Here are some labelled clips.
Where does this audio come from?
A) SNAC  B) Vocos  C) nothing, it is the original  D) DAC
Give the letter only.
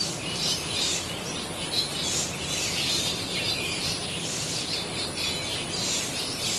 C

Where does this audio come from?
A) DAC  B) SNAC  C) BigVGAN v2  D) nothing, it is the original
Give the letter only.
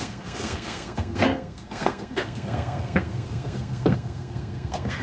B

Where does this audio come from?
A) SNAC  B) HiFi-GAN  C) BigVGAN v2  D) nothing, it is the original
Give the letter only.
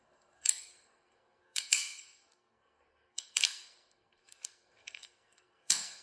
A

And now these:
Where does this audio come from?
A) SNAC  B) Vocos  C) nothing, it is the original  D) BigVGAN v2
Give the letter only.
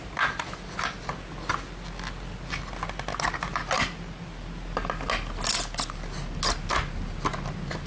C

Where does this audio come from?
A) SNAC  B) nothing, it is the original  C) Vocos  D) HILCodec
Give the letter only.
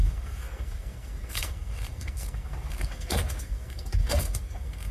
A